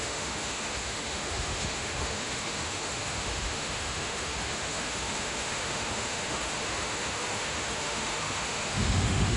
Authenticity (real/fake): fake